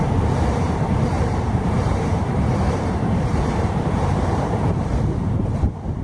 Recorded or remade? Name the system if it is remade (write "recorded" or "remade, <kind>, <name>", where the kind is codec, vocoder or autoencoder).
remade, vocoder, BigVGAN v2